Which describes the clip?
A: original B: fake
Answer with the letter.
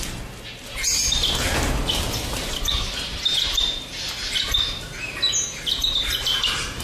A